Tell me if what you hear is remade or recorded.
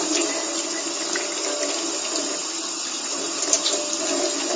recorded